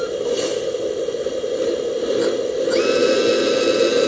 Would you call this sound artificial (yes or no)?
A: no